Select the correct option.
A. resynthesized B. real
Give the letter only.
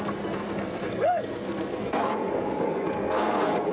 A